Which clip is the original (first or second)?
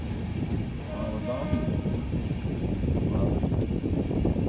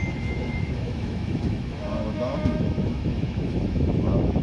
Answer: first